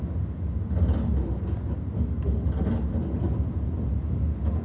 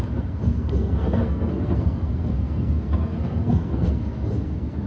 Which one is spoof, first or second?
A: second